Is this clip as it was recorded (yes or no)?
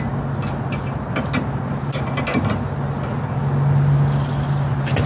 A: yes